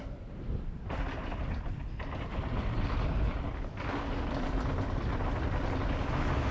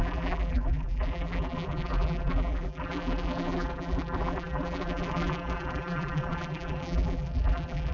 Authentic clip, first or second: first